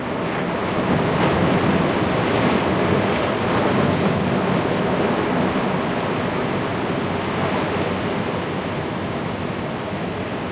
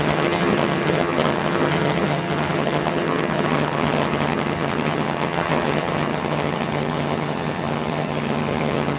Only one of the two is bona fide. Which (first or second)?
first